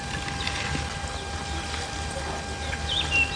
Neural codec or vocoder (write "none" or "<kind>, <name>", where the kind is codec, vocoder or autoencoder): none